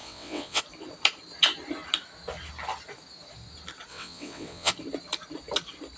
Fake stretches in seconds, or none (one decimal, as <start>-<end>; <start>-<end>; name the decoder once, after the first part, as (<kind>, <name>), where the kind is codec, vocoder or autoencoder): 0.0-0.6 (vocoder, WaveNeXt); 3.9-4.7